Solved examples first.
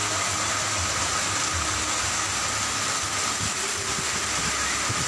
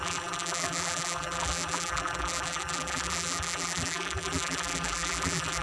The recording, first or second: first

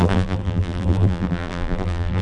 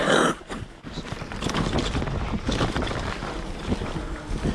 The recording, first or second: second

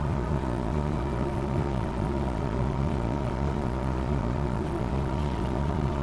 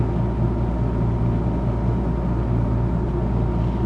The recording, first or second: second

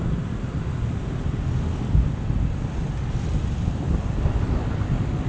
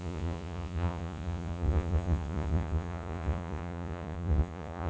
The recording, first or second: first